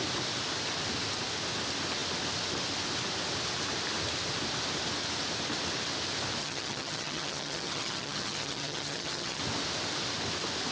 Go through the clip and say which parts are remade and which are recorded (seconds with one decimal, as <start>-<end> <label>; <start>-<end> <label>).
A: 0.0-6.4 recorded; 6.4-9.4 remade; 9.4-10.7 recorded